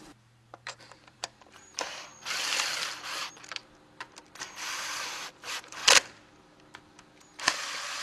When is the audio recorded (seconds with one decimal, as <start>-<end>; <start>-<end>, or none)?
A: 2.1-4.4; 5.8-8.0